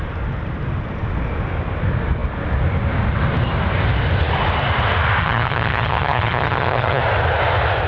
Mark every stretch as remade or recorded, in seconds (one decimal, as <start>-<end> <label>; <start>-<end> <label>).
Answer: 0.0-5.2 recorded; 5.2-7.0 remade; 7.0-7.9 recorded